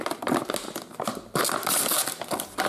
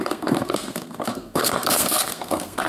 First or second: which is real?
first